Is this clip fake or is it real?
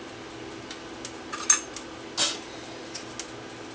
real